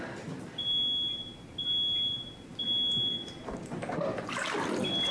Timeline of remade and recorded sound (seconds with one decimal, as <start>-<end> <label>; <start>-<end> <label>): 0.0-5.1 recorded